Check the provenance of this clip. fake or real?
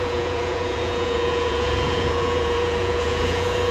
fake